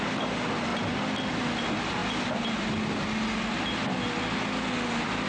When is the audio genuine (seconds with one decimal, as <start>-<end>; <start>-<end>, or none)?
0.0-5.3